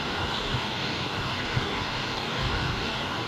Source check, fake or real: fake